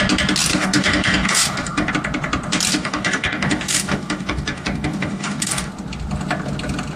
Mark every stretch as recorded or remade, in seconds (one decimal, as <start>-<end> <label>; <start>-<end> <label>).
0.0-0.5 recorded; 0.5-1.9 remade; 1.9-2.7 recorded; 2.7-5.7 remade; 5.7-7.0 recorded